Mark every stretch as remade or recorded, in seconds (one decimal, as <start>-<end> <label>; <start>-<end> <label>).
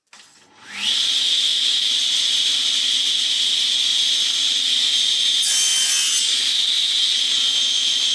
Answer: 0.0-8.1 recorded